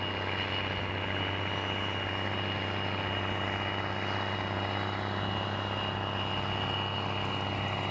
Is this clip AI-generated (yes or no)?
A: no